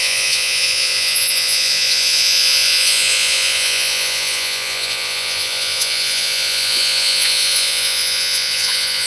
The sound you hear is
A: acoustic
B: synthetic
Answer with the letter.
B